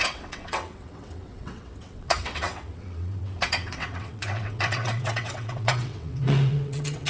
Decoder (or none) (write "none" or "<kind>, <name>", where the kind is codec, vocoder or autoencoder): vocoder, WaveNeXt